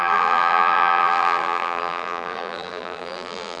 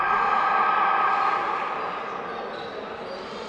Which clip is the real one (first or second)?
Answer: second